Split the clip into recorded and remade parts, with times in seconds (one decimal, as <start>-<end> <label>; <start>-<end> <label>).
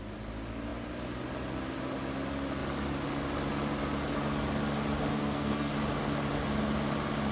0.0-5.1 recorded; 5.1-5.7 remade; 5.7-7.3 recorded